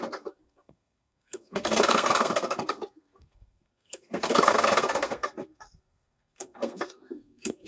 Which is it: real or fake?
fake